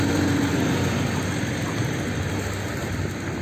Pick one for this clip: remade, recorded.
recorded